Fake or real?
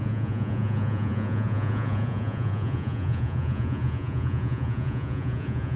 fake